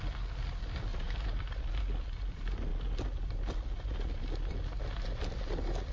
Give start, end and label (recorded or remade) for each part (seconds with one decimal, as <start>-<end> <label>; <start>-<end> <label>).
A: 0.0-0.9 recorded; 0.9-1.8 remade; 1.8-5.9 recorded